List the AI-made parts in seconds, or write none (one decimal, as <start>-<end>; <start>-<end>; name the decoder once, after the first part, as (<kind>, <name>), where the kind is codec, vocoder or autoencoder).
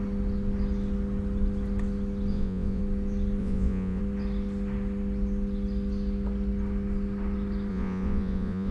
2.3-2.8 (vocoder, Vocos); 3.4-4.0; 7.7-8.7